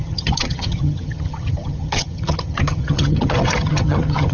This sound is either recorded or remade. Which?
remade